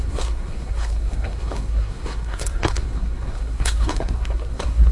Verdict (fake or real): fake